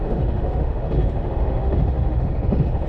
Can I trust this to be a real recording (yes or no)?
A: no